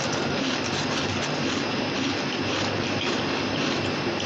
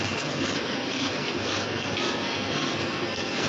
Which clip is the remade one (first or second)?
second